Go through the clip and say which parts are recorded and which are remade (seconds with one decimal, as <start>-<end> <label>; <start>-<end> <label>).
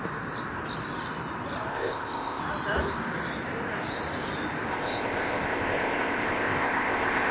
0.0-1.7 recorded; 1.7-2.4 remade; 2.4-4.7 recorded; 4.7-7.3 remade